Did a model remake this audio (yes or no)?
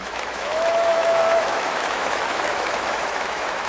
yes